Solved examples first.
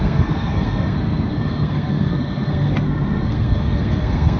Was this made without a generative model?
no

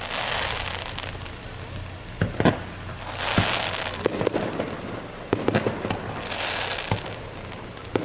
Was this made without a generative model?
yes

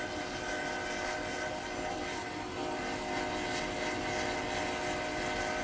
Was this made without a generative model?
yes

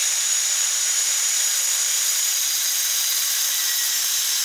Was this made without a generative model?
no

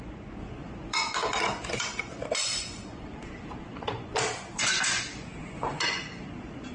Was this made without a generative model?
no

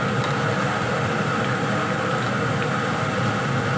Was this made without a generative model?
yes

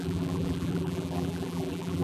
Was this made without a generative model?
no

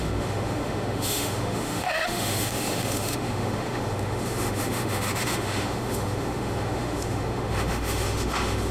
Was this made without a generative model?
no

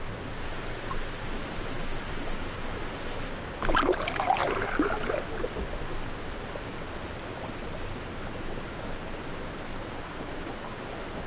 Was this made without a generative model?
yes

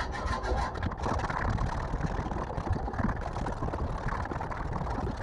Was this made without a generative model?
yes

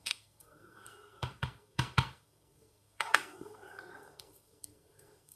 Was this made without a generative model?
no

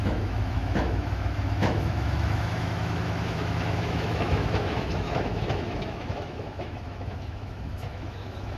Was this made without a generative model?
no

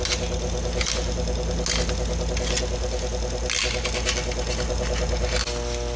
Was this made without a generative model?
yes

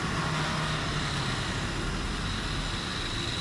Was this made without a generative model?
yes